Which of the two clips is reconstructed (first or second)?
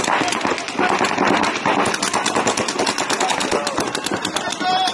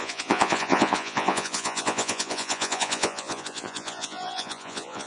second